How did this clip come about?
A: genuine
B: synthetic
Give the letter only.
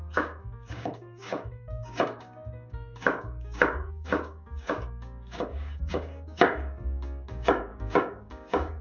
B